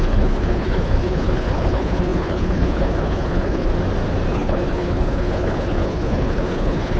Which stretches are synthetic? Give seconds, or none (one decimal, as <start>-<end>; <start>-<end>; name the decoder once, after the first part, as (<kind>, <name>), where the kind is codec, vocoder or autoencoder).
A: 0.0-3.7 (codec, HILCodec); 4.3-7.0